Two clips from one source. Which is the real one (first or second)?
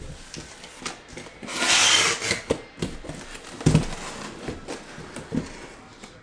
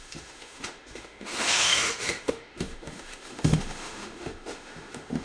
first